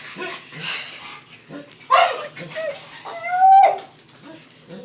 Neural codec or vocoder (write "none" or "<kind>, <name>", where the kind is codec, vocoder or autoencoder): none